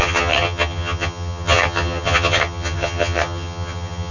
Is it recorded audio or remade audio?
remade